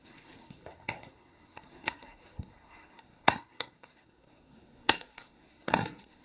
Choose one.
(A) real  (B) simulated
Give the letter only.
B